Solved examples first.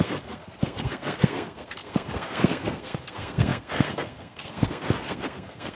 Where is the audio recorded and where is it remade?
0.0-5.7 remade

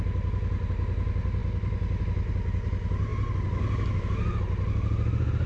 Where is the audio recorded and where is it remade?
0.0-5.5 recorded

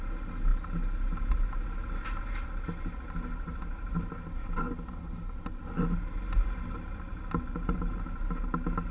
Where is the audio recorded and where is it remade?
0.0-8.9 recorded

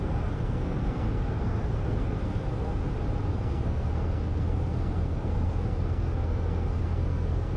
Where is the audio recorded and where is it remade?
0.0-2.8 remade; 2.8-3.3 recorded; 3.3-7.6 remade

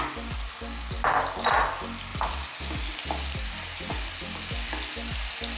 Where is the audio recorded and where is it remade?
0.0-5.6 recorded

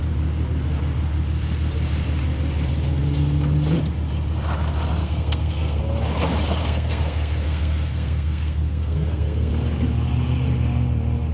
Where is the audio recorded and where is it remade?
0.0-5.0 recorded; 5.0-5.8 remade; 5.8-6.6 recorded; 6.6-9.5 remade; 9.5-11.3 recorded

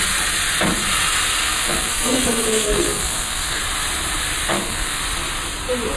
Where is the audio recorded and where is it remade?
0.0-1.4 recorded; 1.4-3.6 remade; 3.6-4.5 recorded; 4.5-5.0 remade; 5.0-6.0 recorded

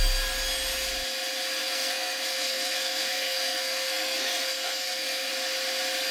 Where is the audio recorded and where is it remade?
0.0-1.6 recorded; 1.6-5.3 remade; 5.3-6.1 recorded